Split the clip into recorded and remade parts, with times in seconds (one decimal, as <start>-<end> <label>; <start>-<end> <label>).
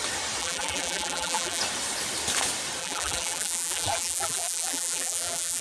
0.0-0.4 recorded; 0.4-1.6 remade; 1.6-2.8 recorded; 2.8-5.6 remade